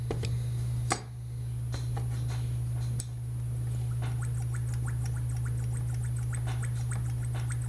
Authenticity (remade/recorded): recorded